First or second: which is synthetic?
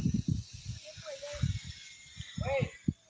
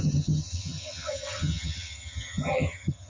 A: second